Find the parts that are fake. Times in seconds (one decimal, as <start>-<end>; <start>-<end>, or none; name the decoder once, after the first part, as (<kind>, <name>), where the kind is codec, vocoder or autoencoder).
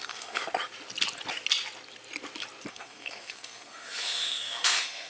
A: 0.0-0.4 (codec, SNAC); 2.7-5.1